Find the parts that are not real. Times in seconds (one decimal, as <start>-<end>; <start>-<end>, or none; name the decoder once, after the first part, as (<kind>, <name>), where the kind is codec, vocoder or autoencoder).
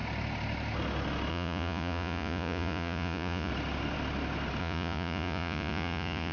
1.3-3.5 (vocoder, Vocos); 4.6-6.3